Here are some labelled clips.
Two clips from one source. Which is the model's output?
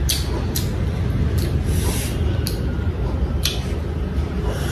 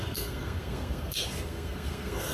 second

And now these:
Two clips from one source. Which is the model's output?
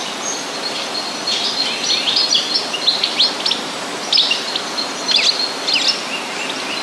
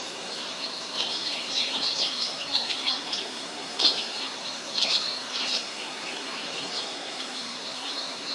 second